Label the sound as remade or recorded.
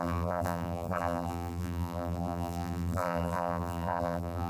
remade